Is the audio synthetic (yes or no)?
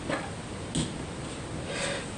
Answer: no